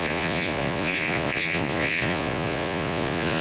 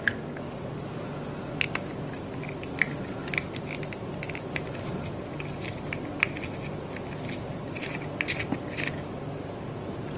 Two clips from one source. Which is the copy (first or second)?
first